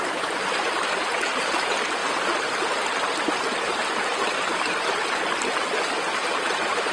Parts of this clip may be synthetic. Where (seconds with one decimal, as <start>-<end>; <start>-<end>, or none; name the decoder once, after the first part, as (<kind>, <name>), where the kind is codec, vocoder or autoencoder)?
2.0-4.3 (vocoder, BigVGAN v2); 6.2-6.9

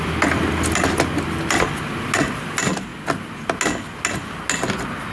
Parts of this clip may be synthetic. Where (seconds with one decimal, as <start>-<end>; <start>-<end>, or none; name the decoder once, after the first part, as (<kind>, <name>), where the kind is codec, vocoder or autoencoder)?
none